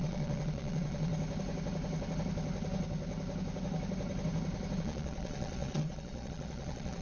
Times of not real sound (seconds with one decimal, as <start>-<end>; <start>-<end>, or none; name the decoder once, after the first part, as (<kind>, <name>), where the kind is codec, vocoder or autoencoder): 0.0-1.1 (vocoder, Vocos); 4.8-7.0